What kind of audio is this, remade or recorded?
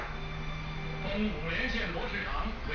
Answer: recorded